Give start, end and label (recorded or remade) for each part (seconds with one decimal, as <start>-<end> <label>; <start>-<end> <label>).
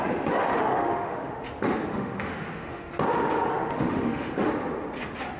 0.0-0.4 recorded; 0.4-1.5 remade; 1.5-1.9 recorded; 1.9-2.9 remade; 2.9-3.5 recorded; 3.5-4.5 remade; 4.5-5.4 recorded